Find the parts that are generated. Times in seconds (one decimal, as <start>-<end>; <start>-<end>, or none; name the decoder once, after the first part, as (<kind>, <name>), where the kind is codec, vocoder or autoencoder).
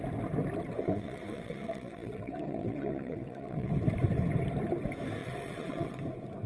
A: 0.8-3.7 (vocoder, WaveNeXt); 5.2-6.0